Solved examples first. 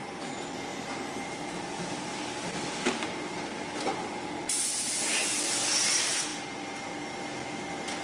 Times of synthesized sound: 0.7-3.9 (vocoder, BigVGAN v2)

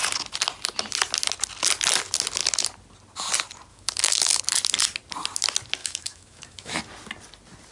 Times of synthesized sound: 3.7-4.4 (autoencoder, DAC-VAE); 5.8-6.8

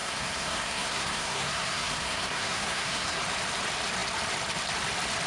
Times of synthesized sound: 0.0-3.2 (codec, SNAC)

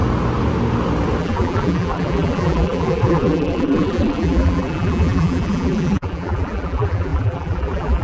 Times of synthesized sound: 1.2-8.0 (vocoder, BigVGAN v2)

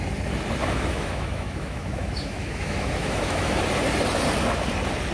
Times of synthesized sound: 0.6-3.6 (autoencoder, DAC-VAE)

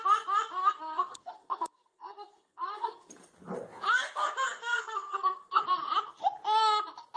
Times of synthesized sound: 0.6-3.1 (codec, SNAC); 4.6-5.6

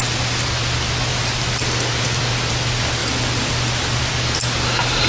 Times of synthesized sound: 3.0-4.0 (vocoder, BigVGAN v2)

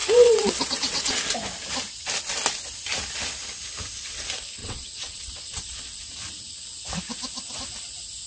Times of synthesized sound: 0.0-1.2 (vocoder, WaveNeXt); 4.6-6.0